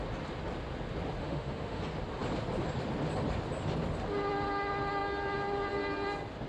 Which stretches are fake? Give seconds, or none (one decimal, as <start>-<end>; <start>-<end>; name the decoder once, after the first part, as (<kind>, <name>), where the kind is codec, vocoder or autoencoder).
1.2-1.8 (autoencoder, DAC-VAE)